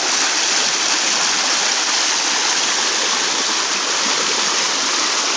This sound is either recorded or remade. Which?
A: recorded